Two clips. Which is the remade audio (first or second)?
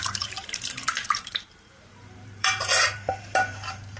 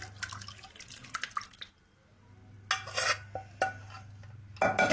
first